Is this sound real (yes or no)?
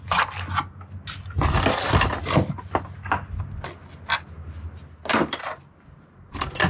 yes